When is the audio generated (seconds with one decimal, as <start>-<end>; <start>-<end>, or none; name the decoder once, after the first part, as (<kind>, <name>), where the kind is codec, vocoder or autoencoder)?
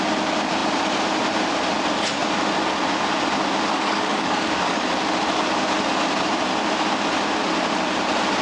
3.7-4.8 (codec, DAC)